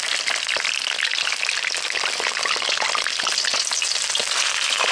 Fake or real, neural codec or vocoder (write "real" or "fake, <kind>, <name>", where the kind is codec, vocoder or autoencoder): real